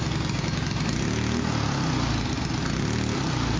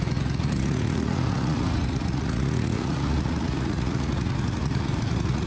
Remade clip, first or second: second